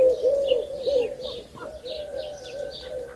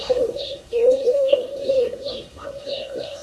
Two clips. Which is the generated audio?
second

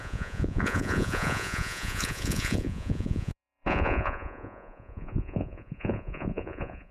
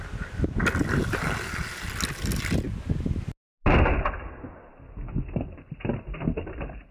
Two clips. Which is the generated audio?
first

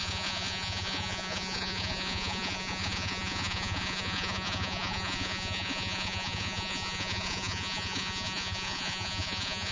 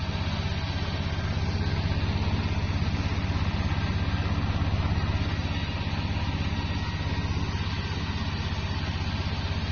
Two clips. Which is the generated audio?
first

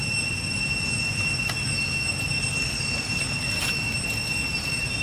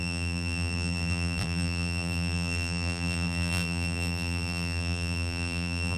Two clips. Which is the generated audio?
second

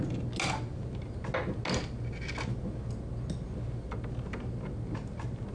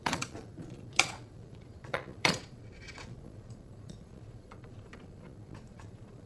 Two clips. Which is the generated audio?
second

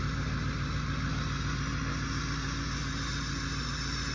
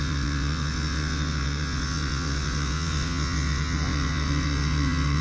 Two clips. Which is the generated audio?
second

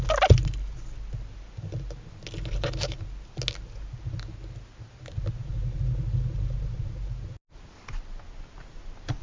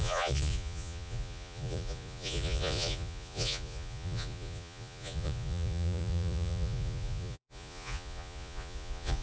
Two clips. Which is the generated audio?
second